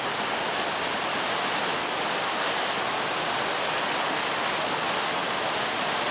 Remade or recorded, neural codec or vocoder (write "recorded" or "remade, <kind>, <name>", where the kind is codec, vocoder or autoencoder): recorded